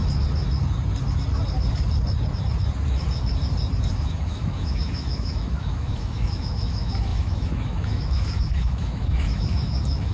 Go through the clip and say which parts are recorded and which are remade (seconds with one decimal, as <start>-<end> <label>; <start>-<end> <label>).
0.0-3.9 recorded; 3.9-10.1 remade